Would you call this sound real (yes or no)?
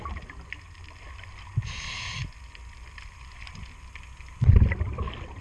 yes